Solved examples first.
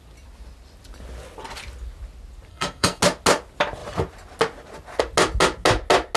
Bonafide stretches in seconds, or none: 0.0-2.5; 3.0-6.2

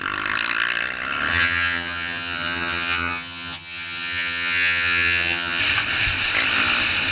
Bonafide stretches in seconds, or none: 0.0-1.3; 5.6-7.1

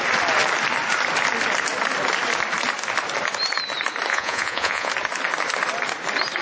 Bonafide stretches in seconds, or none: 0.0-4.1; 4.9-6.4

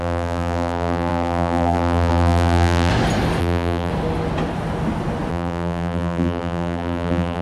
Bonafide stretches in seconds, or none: 2.9-3.4; 3.9-5.3

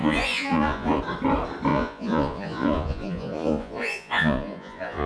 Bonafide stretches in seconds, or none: 1.0-1.7

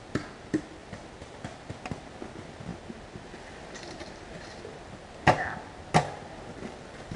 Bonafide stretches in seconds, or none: 0.0-7.2